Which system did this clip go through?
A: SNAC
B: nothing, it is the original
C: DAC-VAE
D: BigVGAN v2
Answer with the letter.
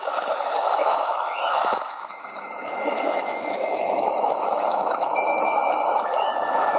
C